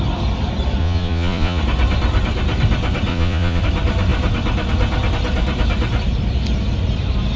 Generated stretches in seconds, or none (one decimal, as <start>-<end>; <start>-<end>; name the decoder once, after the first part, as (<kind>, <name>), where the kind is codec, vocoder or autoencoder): 0.8-1.6 (vocoder, Vocos); 3.1-3.6